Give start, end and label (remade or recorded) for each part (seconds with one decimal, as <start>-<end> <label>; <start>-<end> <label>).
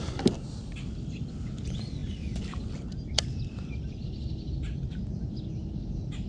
0.0-6.3 recorded